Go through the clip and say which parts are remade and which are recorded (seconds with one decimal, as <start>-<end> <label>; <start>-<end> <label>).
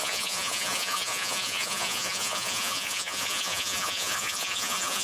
0.0-5.0 remade